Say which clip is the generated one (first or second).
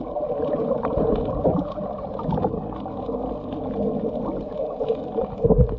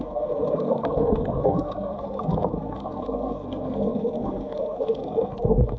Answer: second